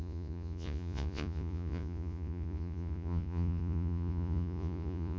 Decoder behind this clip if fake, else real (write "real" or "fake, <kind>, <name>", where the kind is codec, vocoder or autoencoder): fake, vocoder, Vocos